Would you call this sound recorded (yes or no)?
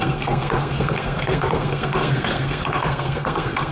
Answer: no